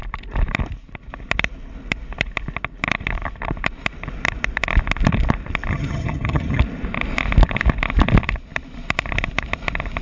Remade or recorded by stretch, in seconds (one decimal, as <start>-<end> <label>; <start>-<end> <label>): 0.0-5.7 recorded; 5.7-6.6 remade; 6.6-10.0 recorded